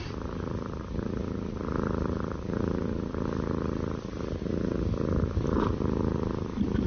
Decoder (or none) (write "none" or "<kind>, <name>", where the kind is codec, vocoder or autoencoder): none